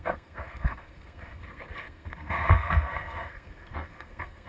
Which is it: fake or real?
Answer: fake